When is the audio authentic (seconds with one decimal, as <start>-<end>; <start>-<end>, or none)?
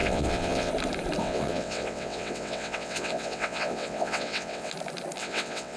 0.7-1.2; 4.7-5.2